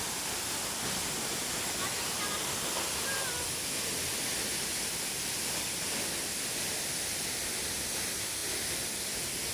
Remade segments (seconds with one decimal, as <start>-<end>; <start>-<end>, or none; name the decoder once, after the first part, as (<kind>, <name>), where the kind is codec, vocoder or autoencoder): none